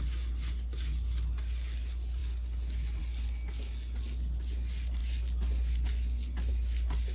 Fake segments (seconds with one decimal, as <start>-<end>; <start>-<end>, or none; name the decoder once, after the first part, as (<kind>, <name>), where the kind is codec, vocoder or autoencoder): none

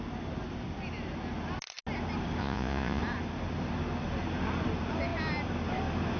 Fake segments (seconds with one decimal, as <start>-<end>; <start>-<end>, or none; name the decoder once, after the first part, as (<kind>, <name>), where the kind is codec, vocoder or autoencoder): 2.4-3.0 (vocoder, Vocos)

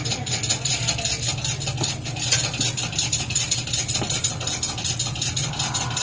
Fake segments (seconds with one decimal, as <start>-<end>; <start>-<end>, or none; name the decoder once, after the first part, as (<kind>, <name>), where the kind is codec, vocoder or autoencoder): none

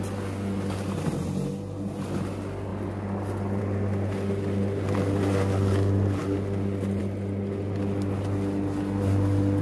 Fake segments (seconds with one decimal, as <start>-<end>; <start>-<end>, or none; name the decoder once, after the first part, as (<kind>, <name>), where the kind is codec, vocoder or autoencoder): none

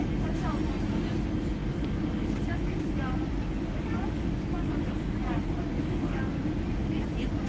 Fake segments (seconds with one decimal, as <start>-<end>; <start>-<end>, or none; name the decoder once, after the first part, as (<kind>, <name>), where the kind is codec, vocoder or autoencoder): 1.6-2.4 (codec, DAC); 3.7-4.8; 5.7-6.4

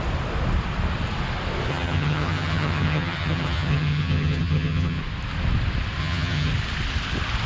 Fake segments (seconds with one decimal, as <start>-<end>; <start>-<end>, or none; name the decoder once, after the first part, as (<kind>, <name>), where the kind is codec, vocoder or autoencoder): 1.7-5.0 (vocoder, HiFi-GAN); 6.0-6.5